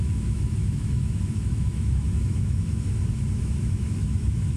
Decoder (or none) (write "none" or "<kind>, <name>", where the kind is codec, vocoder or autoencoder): autoencoder, DAC-VAE